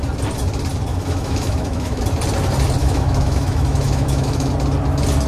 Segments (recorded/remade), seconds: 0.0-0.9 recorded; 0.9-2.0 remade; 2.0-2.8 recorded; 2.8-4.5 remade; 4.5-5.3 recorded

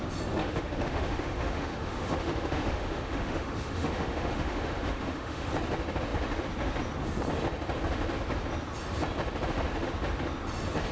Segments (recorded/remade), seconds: 0.0-0.4 recorded; 0.4-5.5 remade; 5.5-10.9 recorded

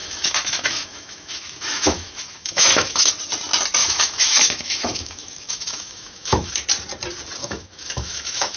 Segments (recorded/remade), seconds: 0.0-3.1 remade; 3.1-3.8 recorded; 3.8-6.5 remade; 6.5-7.4 recorded; 7.4-8.6 remade

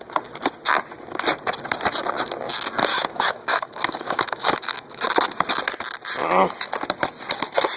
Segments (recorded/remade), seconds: 0.0-2.9 recorded; 2.9-5.0 remade; 5.0-7.8 recorded

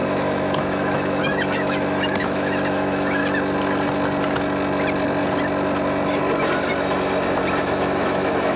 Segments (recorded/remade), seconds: 0.0-3.2 remade; 3.2-7.6 recorded; 7.6-8.6 remade

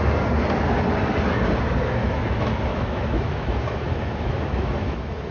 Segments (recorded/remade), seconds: 0.0-2.0 recorded; 2.0-5.3 remade

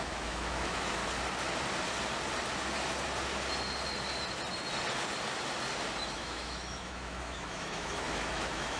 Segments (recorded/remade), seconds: 0.0-1.0 remade; 1.0-6.0 recorded; 6.0-8.8 remade